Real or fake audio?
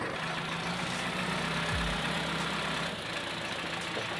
real